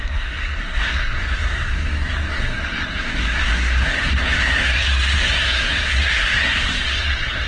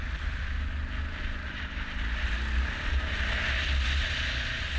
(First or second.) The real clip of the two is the second